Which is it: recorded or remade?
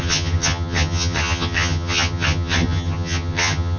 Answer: remade